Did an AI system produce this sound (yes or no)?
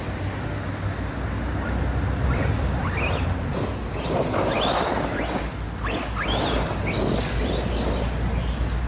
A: no